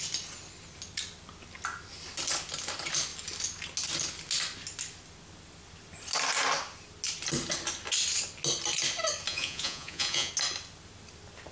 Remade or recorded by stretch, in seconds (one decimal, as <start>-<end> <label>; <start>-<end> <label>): 0.0-9.3 recorded; 9.3-10.3 remade; 10.3-11.5 recorded